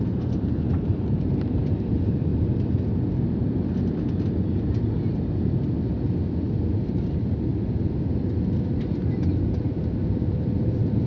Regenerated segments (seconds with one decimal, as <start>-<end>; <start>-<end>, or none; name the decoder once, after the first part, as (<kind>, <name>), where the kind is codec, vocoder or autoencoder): 0.0-2.3 (vocoder, BigVGAN v2); 6.9-7.5; 8.7-11.1